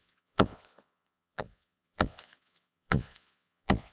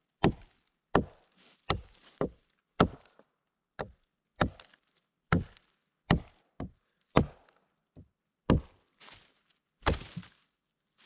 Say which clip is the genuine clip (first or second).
second